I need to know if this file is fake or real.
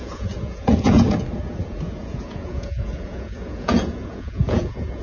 fake